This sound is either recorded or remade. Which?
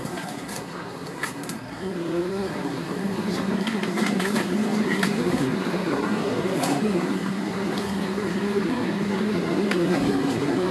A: remade